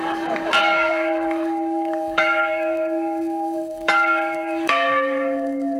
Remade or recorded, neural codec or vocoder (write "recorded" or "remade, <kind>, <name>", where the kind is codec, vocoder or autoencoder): remade, codec, DAC